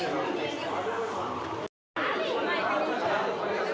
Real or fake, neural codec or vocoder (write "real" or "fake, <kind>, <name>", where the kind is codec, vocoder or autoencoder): real